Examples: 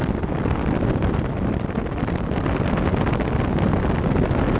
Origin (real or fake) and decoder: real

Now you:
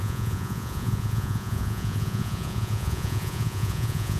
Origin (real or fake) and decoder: fake, vocoder, Vocos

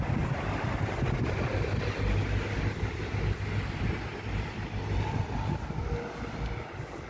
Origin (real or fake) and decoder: real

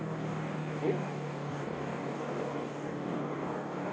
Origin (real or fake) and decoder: fake, codec, DAC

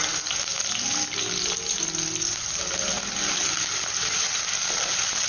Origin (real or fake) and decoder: real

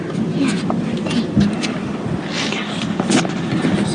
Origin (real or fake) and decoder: real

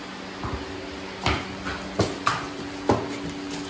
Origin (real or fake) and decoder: real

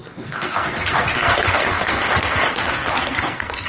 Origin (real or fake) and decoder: fake, codec, SNAC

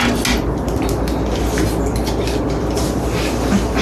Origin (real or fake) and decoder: real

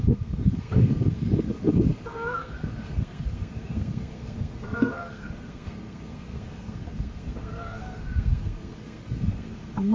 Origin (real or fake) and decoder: fake, codec, SNAC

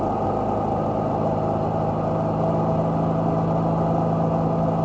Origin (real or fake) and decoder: real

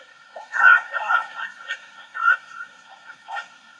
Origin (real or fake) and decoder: fake, codec, SNAC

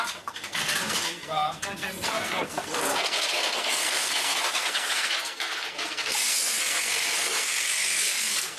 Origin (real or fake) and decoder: fake, codec, SNAC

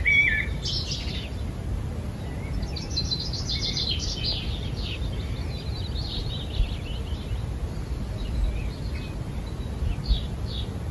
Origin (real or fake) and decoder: real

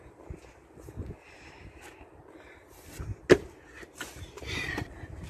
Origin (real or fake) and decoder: real